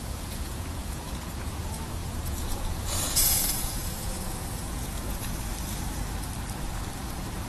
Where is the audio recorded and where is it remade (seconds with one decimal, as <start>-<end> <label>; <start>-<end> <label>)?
0.0-5.5 remade; 5.5-7.5 recorded